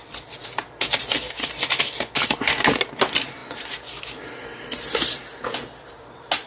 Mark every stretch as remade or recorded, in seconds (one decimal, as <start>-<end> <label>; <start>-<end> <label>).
0.0-6.5 recorded